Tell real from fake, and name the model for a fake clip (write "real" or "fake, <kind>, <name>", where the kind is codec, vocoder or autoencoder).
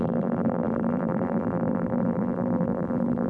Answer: fake, vocoder, BigVGAN v2